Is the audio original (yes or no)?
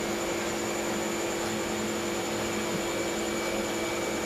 yes